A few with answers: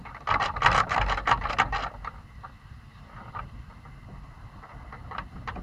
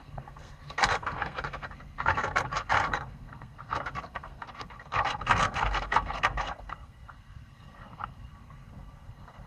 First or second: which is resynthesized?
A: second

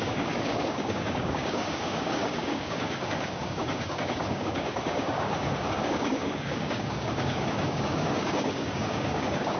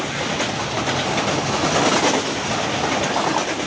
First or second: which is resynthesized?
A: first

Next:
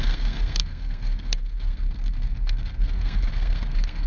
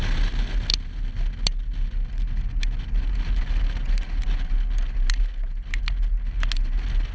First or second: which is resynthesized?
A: first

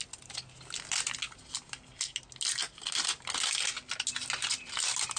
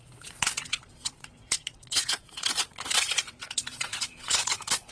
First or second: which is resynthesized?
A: second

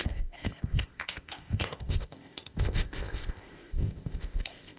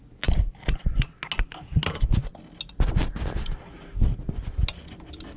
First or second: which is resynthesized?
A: first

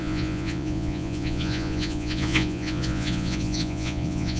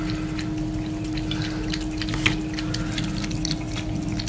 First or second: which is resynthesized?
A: first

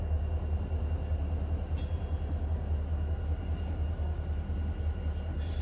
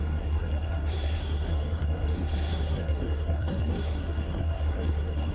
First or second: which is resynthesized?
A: second